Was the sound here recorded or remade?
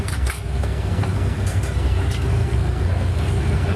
remade